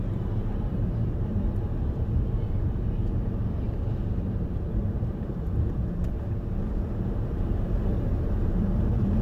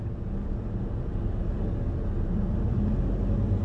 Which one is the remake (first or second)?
first